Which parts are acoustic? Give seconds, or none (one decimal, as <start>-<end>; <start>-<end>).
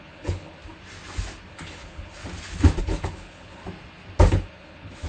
0.6-1.5; 2.2-2.8; 3.6-4.3